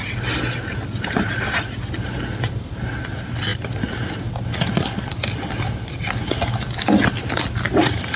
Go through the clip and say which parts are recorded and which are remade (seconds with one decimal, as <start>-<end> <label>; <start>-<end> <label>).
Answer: 0.0-8.2 recorded